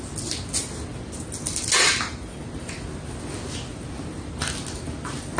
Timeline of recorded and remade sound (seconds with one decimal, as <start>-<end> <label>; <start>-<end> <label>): 0.0-5.4 recorded